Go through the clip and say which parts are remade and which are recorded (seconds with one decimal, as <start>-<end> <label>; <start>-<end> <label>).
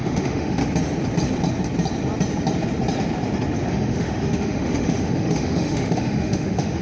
0.0-0.6 remade; 0.6-3.7 recorded; 3.7-6.8 remade